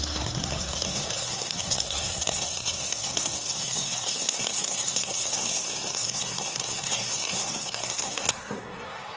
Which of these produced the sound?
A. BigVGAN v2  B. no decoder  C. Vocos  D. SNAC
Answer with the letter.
D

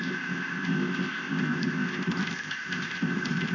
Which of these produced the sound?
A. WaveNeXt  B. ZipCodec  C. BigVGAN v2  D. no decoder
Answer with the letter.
B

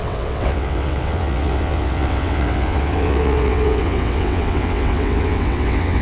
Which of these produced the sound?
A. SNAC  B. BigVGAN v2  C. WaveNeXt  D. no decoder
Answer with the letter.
C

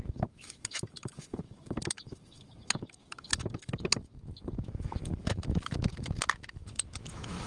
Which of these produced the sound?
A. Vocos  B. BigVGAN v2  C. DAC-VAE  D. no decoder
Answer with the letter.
C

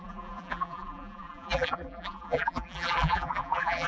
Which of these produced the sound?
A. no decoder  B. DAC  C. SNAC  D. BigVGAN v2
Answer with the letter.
D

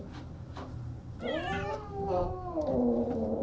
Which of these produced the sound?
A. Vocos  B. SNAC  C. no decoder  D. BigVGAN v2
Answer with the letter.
C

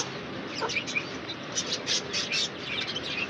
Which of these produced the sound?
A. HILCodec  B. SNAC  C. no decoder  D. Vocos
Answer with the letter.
C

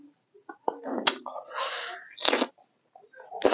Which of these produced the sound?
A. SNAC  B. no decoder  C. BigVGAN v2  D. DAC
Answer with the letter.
B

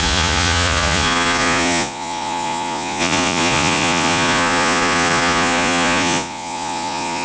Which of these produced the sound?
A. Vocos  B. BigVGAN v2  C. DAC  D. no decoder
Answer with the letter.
A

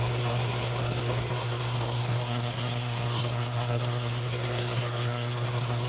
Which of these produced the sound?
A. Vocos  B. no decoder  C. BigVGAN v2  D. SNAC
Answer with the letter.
D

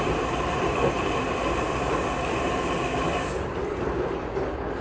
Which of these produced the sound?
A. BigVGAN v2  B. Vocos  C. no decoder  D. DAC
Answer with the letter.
A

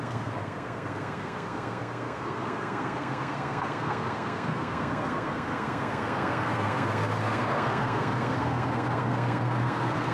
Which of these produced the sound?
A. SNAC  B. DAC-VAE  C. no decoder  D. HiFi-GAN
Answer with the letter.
A